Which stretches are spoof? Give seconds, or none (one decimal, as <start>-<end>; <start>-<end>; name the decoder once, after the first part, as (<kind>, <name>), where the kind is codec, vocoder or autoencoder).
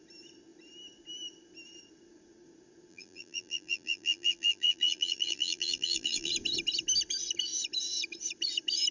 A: 2.9-6.3 (vocoder, BigVGAN v2)